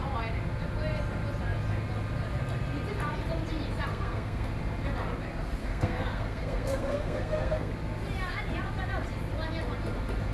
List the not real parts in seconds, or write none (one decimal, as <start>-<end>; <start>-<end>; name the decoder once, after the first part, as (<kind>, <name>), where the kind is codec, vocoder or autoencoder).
3.9-4.5 (codec, SNAC); 5.6-7.7